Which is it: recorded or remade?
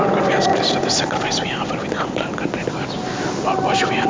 recorded